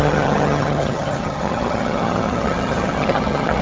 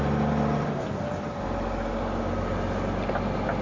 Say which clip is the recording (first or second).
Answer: second